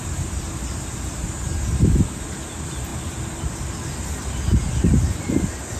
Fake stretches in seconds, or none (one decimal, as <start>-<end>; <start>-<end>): none